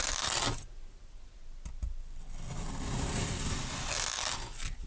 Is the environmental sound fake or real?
real